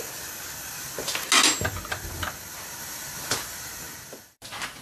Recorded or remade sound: recorded